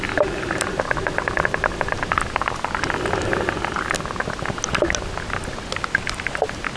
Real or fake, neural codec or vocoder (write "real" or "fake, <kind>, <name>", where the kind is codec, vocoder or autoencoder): real